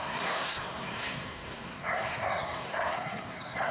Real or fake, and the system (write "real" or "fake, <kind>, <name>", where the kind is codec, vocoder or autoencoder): fake, codec, SNAC